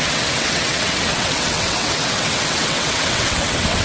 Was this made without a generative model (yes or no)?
no